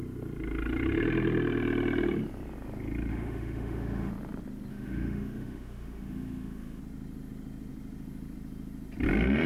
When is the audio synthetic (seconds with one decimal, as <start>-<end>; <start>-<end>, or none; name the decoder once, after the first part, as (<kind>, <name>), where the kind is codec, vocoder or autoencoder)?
3.1-4.1 (autoencoder, DAC-VAE); 4.7-6.8

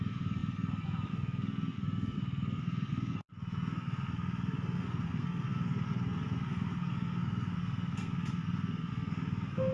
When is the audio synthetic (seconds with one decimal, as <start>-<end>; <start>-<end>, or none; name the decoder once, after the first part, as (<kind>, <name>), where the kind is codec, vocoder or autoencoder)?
0.0-9.7 (codec, SNAC)

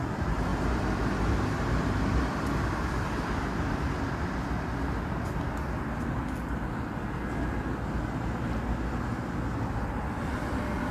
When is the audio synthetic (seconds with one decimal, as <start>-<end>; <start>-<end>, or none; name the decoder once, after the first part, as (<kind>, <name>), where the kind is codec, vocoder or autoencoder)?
none